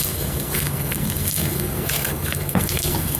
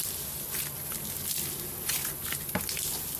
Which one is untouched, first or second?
second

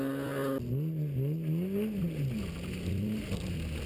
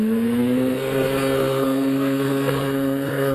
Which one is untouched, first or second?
first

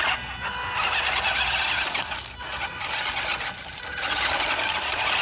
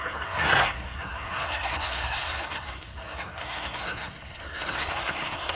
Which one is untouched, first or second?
first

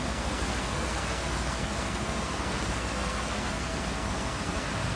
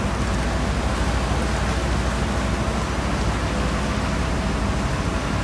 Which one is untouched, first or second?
second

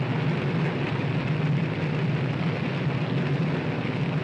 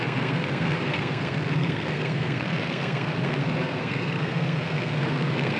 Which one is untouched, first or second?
first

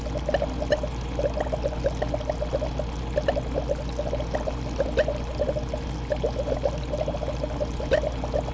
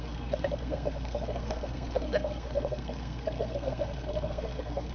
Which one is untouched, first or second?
first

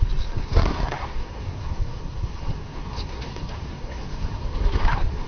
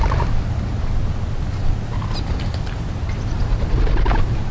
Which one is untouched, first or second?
second